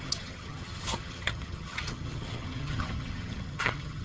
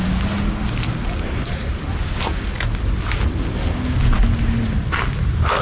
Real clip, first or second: second